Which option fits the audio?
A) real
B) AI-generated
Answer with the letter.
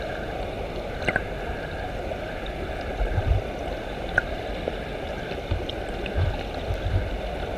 B